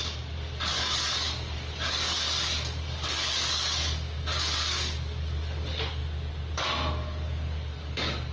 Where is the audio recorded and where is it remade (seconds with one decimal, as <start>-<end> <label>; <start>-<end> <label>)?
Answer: 0.0-6.0 remade; 6.0-6.9 recorded; 6.9-8.3 remade